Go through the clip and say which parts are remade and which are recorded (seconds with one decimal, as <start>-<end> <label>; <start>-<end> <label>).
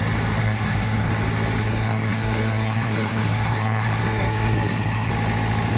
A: 0.0-0.4 recorded; 0.4-1.1 remade; 1.1-1.6 recorded; 1.6-5.1 remade; 5.1-5.8 recorded